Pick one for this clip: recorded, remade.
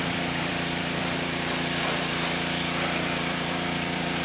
remade